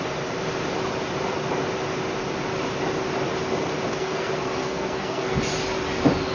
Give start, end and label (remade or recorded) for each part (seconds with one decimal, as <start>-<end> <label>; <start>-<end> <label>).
0.0-3.9 recorded; 3.9-5.4 remade; 5.4-6.3 recorded